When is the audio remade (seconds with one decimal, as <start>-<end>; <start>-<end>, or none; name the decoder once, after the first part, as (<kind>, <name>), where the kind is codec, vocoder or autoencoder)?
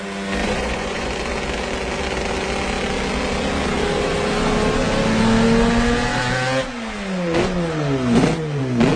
0.4-1.1 (vocoder, Vocos)